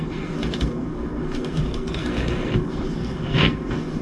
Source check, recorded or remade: remade